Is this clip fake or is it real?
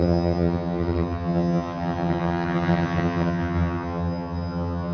fake